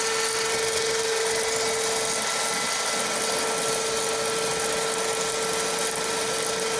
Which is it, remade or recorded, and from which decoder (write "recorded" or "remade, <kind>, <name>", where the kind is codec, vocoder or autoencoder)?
recorded